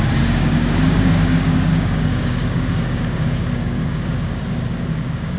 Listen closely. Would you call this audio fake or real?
fake